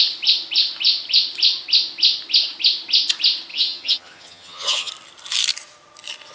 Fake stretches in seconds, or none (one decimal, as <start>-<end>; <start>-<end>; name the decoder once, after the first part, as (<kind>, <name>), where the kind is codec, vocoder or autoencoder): 3.5-4.9 (vocoder, HiFi-GAN)